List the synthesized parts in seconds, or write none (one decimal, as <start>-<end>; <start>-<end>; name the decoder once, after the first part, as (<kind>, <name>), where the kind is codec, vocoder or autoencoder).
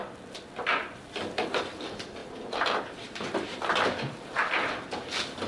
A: 0.5-5.5 (vocoder, BigVGAN v2)